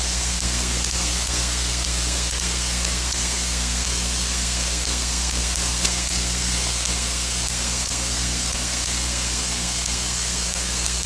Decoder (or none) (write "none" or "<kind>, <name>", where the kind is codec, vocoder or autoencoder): codec, SNAC